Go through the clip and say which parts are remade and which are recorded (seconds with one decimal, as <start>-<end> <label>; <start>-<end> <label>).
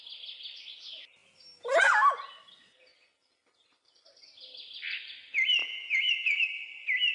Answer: 0.0-5.6 recorded; 5.6-6.4 remade; 6.4-7.1 recorded